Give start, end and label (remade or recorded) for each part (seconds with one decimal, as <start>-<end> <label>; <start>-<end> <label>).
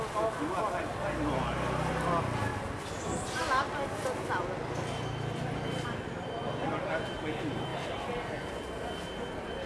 0.0-9.7 recorded